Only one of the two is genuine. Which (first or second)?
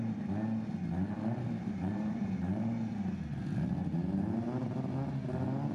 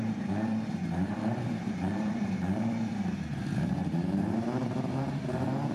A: first